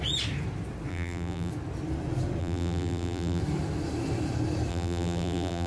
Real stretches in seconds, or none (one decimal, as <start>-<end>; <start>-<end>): 0.0-0.9; 1.5-2.4; 3.4-4.7